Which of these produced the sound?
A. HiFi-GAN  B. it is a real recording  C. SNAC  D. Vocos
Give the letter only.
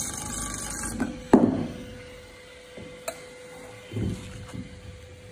B